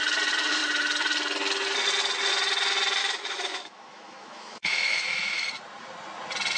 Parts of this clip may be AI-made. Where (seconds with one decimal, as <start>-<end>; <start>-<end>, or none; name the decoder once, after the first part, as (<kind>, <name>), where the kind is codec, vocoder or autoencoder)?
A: 3.0-5.5 (autoencoder, DAC-VAE)